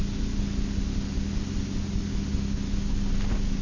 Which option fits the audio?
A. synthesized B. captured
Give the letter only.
B